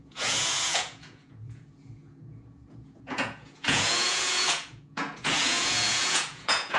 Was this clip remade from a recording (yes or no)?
yes